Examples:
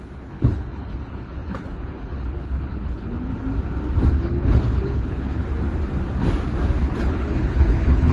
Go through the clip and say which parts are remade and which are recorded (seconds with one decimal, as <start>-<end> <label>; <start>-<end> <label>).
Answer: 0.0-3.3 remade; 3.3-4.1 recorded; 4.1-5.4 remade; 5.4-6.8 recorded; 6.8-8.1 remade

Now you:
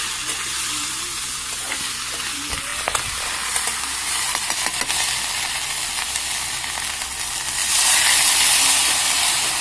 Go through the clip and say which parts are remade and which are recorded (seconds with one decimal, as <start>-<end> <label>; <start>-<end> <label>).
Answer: 0.0-9.6 recorded

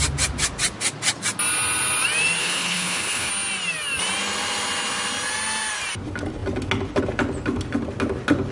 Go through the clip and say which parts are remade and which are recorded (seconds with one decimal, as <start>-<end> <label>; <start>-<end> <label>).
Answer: 0.0-2.4 recorded; 2.4-3.3 remade; 3.3-8.5 recorded

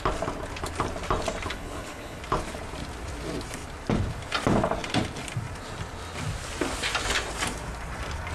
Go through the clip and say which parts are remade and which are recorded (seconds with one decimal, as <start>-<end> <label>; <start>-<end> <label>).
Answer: 0.0-1.5 recorded; 1.5-2.2 remade; 2.2-8.3 recorded

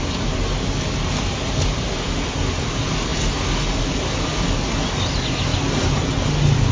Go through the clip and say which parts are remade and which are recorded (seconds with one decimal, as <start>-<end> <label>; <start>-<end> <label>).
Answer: 0.0-6.7 recorded